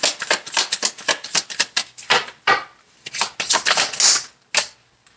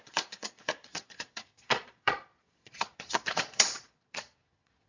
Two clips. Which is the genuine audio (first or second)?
first